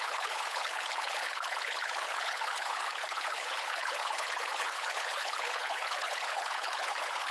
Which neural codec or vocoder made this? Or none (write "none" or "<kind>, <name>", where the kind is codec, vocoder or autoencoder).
codec, HILCodec